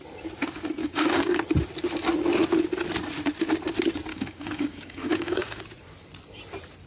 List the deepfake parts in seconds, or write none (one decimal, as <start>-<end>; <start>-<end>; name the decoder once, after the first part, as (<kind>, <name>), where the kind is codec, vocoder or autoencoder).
0.8-1.4 (codec, DAC); 4.1-5.6